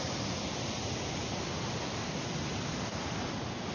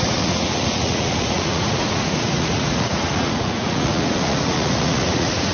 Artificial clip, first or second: second